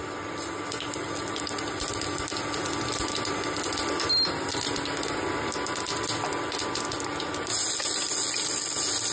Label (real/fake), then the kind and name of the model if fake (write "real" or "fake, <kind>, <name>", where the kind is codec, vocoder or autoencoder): real